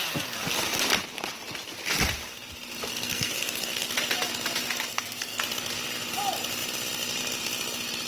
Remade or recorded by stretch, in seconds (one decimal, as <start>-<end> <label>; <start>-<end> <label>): 0.0-2.9 recorded; 2.9-3.9 remade; 3.9-4.9 recorded; 4.9-5.4 remade; 5.4-8.1 recorded